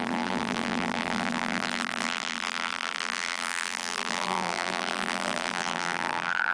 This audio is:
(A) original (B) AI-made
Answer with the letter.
B